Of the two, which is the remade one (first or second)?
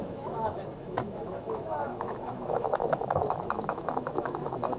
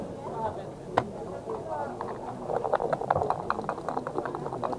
first